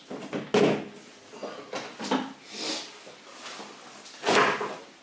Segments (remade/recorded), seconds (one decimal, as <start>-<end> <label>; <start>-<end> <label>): 0.0-5.0 recorded